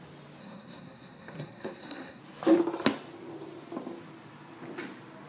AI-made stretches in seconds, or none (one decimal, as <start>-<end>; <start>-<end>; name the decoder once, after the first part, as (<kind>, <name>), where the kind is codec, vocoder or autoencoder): 0.4-2.2 (codec, SNAC)

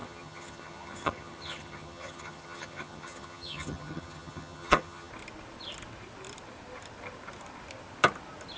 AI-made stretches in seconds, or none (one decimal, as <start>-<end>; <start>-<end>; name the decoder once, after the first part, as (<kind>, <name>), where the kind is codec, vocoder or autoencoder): 0.0-5.1 (vocoder, HiFi-GAN)

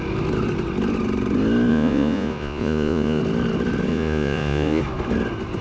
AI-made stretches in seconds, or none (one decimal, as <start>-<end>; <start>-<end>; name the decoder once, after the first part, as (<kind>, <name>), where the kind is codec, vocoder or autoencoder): 1.7-3.2 (vocoder, Vocos); 3.9-4.8

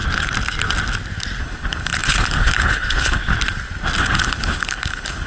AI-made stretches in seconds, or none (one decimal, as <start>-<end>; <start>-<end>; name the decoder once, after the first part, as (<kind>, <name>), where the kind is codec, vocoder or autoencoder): 1.4-3.2 (codec, HILCodec); 4.0-5.3

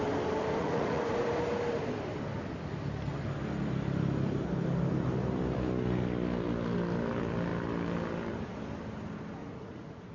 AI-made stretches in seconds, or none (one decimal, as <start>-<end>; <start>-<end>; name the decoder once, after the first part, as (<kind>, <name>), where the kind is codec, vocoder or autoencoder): 0.6-1.2 (vocoder, Vocos); 9.4-10.1

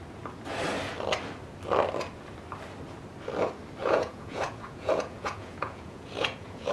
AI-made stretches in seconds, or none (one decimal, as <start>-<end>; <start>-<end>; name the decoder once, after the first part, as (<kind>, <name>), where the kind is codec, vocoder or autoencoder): 3.8-6.7 (vocoder, Vocos)